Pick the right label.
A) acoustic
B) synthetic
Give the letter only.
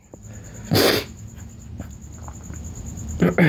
A